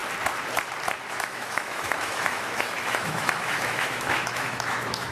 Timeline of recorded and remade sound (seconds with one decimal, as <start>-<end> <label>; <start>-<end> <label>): 0.0-1.1 recorded; 1.1-5.1 remade

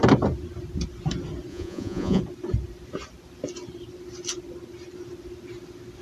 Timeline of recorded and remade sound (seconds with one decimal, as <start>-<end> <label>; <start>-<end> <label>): 0.0-1.5 recorded; 1.5-2.2 remade; 2.2-6.0 recorded

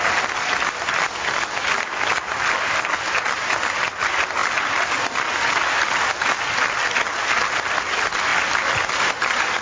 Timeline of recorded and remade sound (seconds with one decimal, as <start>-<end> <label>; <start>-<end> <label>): 0.0-9.6 recorded

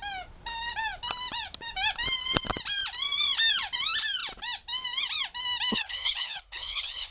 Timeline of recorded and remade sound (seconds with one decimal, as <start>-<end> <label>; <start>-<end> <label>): 0.0-5.7 recorded; 5.7-7.1 remade

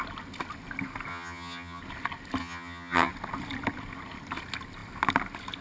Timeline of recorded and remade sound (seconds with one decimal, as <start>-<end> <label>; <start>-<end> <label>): 0.0-1.1 recorded; 1.1-1.8 remade; 1.8-2.4 recorded; 2.4-3.1 remade; 3.1-5.6 recorded

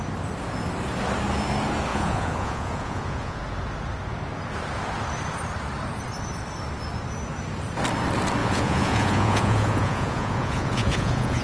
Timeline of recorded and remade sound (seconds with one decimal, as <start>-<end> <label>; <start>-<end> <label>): 0.0-1.9 recorded; 1.9-3.4 remade; 3.4-8.4 recorded; 8.4-11.4 remade

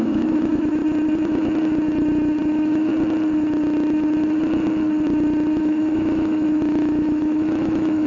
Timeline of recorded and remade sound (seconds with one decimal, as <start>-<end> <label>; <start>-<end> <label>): 0.0-0.8 remade; 0.8-2.4 recorded; 2.4-2.9 remade; 2.9-5.6 recorded; 5.6-8.1 remade

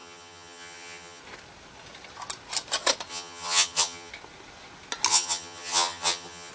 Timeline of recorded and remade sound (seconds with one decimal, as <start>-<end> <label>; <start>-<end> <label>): 0.0-1.2 remade; 1.2-3.1 recorded; 3.1-4.1 remade; 4.1-5.1 recorded; 5.1-6.5 remade